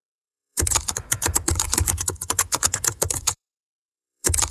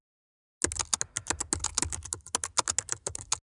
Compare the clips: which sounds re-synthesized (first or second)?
first